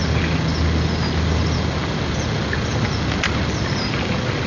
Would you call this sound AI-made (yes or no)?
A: no